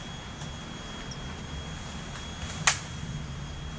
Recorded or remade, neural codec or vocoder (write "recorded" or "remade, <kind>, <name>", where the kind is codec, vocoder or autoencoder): recorded